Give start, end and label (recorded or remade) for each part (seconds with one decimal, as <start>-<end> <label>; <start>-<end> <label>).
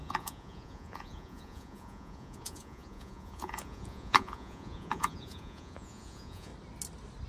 0.0-6.5 remade; 6.5-7.3 recorded